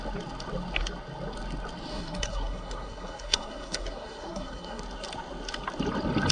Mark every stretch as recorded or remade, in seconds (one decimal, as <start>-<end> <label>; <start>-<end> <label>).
0.0-1.9 recorded; 1.9-4.8 remade; 4.8-6.3 recorded